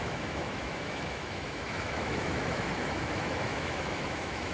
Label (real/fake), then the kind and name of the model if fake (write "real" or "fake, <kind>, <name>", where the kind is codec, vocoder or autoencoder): fake, autoencoder, DAC-VAE